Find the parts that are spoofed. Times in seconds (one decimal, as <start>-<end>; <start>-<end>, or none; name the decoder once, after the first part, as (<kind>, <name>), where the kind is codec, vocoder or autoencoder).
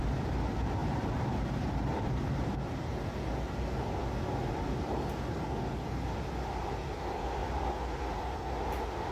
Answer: 0.8-2.4 (vocoder, BigVGAN v2)